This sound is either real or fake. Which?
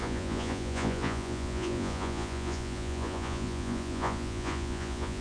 fake